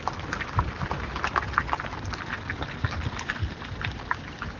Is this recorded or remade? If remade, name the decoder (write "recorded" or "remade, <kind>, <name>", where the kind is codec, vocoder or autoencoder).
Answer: remade, vocoder, BigVGAN v2